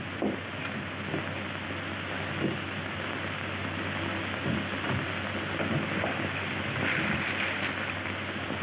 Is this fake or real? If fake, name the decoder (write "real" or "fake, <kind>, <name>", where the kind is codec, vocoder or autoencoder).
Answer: real